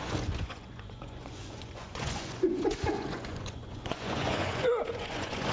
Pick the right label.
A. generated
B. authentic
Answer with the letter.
A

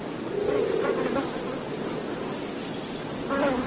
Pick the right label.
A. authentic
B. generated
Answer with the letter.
A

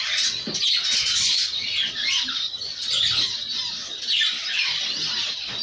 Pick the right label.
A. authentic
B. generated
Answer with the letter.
A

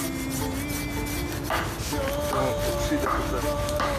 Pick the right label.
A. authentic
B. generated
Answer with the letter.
A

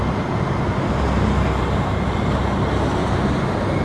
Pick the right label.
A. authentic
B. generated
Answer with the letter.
A